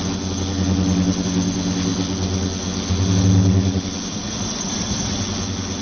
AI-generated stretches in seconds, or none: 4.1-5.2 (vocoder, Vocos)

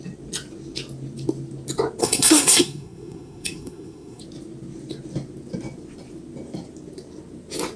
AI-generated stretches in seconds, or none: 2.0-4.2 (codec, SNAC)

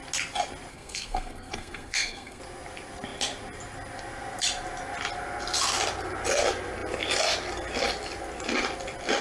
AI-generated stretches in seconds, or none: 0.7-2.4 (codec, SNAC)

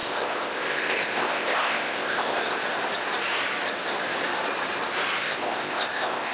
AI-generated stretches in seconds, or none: 0.0-2.6 (codec, ZipCodec); 5.2-6.3

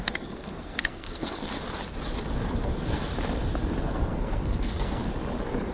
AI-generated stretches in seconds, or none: 0.0-1.6 (codec, SNAC); 2.6-3.1; 3.8-5.0

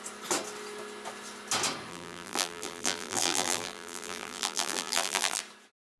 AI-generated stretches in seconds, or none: 1.9-5.4 (vocoder, BigVGAN v2)

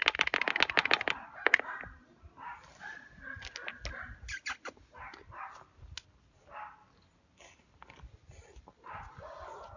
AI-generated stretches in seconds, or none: none